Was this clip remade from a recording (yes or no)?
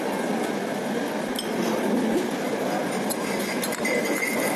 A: no